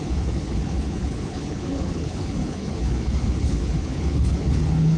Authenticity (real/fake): fake